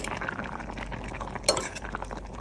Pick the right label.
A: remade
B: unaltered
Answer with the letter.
B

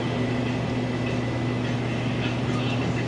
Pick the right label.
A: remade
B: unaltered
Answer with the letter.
B